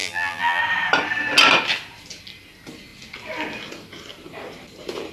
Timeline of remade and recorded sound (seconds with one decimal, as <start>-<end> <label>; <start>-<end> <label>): 0.0-0.6 remade; 0.6-5.1 recorded